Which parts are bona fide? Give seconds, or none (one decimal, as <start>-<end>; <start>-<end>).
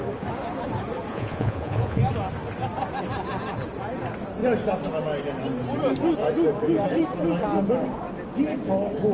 0.0-1.1; 2.0-9.1